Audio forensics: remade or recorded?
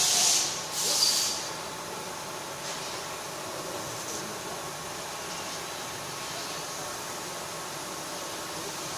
recorded